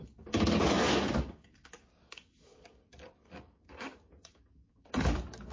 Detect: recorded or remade remade